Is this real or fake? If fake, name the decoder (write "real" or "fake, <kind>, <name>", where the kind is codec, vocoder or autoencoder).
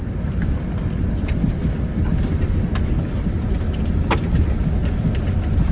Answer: real